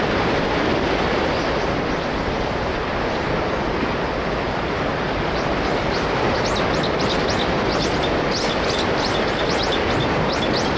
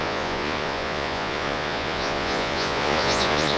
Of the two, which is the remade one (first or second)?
second